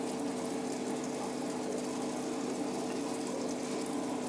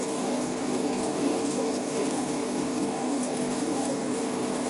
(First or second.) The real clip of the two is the first